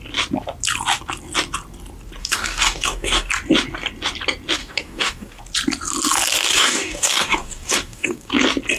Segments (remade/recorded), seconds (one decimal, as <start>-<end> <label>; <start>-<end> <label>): 0.0-2.2 recorded; 2.2-3.3 remade; 3.3-4.6 recorded; 4.6-5.4 remade; 5.4-6.5 recorded; 6.5-8.3 remade; 8.3-8.8 recorded